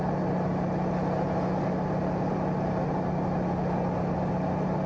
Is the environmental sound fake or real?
real